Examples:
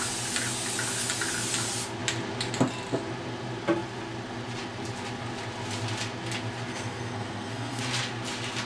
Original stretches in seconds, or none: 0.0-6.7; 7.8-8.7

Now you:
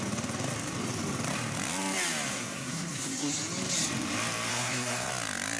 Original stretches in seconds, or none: 0.0-2.3; 3.3-4.5; 5.1-5.6